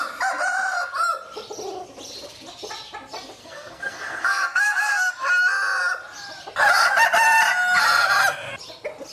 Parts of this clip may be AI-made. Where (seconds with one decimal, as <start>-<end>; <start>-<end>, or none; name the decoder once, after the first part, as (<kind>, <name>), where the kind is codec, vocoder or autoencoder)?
3.4-5.1 (codec, SNAC)